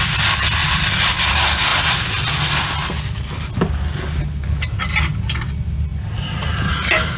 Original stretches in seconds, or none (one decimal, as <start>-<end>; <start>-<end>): 0.0-7.2